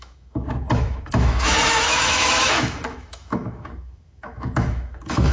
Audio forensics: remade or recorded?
remade